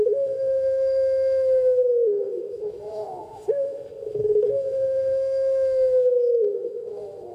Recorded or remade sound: remade